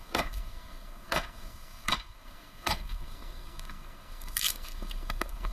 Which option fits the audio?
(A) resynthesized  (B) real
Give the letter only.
A